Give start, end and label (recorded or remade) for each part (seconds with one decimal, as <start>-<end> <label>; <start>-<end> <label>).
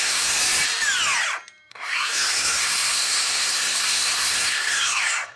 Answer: 0.0-0.4 remade; 0.4-1.7 recorded; 1.7-5.4 remade